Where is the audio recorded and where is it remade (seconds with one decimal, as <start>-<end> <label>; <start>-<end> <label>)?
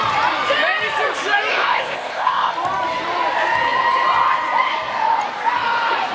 0.0-1.5 recorded; 1.5-2.5 remade; 2.5-6.1 recorded